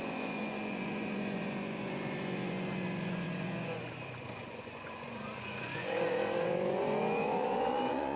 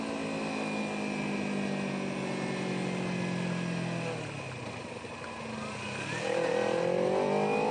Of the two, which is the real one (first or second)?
second